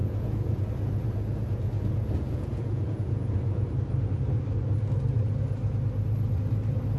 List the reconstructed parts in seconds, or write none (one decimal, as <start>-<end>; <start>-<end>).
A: 0.0-3.7